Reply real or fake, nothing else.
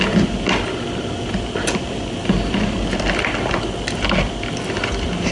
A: real